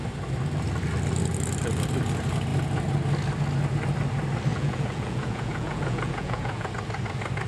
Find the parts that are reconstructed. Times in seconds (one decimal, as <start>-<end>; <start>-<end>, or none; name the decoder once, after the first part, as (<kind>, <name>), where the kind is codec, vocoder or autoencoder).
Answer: 4.5-6.7 (vocoder, Vocos)